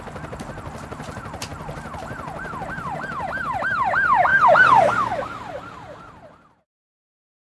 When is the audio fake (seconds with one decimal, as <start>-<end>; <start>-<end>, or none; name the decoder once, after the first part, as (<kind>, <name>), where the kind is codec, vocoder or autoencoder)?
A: none